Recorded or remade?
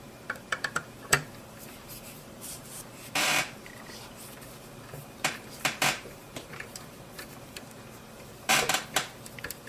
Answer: remade